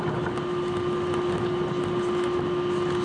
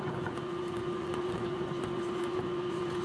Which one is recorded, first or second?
first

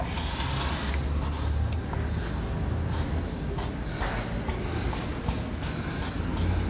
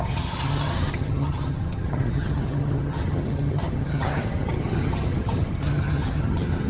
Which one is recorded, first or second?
first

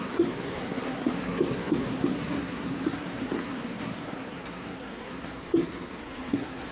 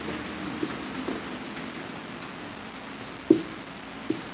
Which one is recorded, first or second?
second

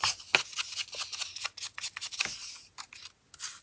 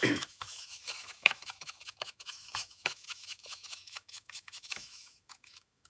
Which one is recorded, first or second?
first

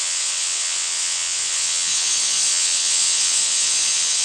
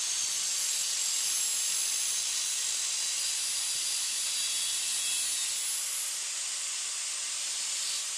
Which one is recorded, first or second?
second